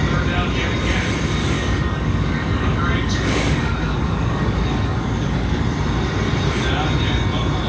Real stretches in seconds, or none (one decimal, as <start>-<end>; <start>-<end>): 0.0-1.4; 5.6-7.7